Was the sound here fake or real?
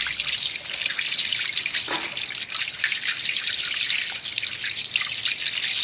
real